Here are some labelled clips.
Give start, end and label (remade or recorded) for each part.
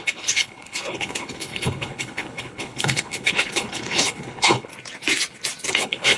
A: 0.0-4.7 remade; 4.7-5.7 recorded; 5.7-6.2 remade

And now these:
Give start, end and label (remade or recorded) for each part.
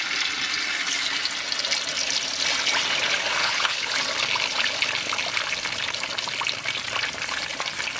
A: 0.0-3.4 recorded; 3.4-3.9 remade; 3.9-8.0 recorded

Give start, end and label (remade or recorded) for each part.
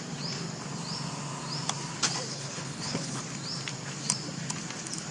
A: 0.0-2.3 recorded; 2.3-3.2 remade; 3.2-5.1 recorded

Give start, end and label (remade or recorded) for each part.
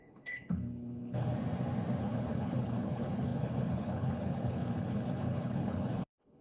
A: 0.0-1.3 remade; 1.3-2.0 recorded; 2.0-6.4 remade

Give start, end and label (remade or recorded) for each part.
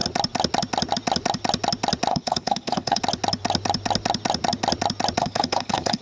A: 0.0-2.1 recorded; 2.1-3.0 remade; 3.0-5.2 recorded; 5.2-6.0 remade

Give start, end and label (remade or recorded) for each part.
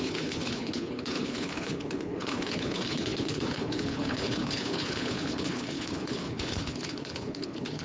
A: 0.0-7.8 remade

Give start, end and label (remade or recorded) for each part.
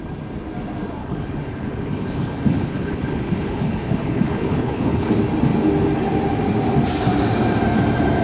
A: 0.0-1.0 recorded; 1.0-5.1 remade; 5.1-8.2 recorded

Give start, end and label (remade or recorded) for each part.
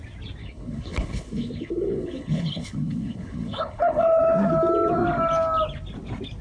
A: 0.0-0.4 recorded; 0.4-4.2 remade; 4.2-6.4 recorded